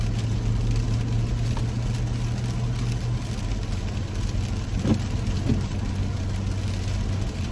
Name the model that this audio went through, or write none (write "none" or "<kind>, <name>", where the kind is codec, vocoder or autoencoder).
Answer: none